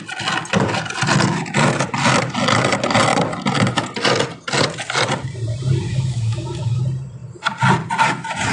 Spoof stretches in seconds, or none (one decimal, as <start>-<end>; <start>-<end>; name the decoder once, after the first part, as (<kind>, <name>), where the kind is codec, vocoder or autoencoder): 5.9-6.8 (autoencoder, DAC-VAE)